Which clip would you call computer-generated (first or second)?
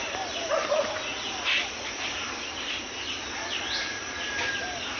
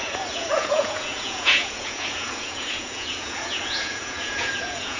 second